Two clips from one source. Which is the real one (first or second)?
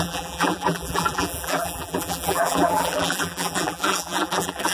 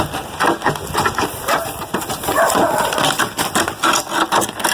second